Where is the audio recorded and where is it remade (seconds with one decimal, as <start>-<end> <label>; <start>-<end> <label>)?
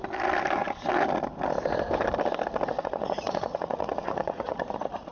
0.0-2.7 recorded; 2.7-5.1 remade